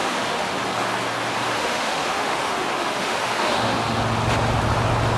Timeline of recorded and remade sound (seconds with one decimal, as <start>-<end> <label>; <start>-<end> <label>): 0.0-0.6 remade; 0.6-1.6 recorded; 1.6-4.0 remade; 4.0-5.2 recorded